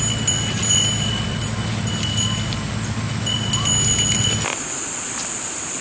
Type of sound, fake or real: real